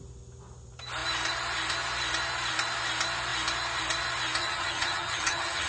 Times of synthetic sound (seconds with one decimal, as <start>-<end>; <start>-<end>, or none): 4.4-5.7